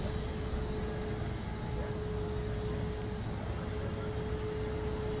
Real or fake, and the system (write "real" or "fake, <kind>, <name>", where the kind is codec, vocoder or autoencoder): real